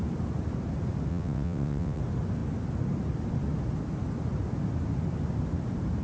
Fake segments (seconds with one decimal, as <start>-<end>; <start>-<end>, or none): 1.1-2.0